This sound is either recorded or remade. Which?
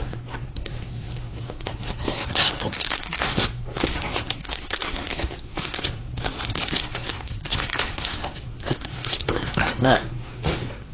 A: remade